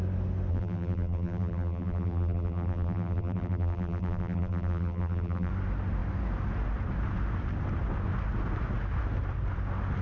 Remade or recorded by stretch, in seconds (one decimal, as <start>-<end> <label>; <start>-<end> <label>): 0.0-0.5 recorded; 0.5-5.5 remade; 5.5-10.0 recorded